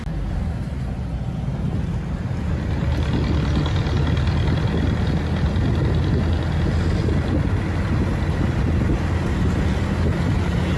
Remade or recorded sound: recorded